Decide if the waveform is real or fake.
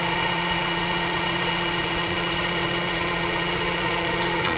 fake